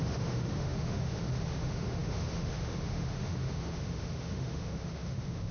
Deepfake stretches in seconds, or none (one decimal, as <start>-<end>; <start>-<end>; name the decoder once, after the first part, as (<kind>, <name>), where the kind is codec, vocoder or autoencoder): 0.0-5.5 (autoencoder, DAC-VAE)